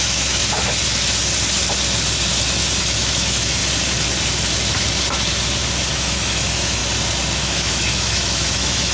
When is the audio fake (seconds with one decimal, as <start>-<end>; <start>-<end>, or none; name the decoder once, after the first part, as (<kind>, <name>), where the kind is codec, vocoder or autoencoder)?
0.0-0.4 (autoencoder, DAC-VAE); 2.8-3.6; 5.9-6.8; 7.4-8.9